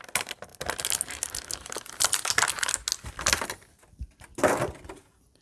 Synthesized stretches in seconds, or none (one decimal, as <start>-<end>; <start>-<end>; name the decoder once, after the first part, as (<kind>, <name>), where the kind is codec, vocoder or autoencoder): none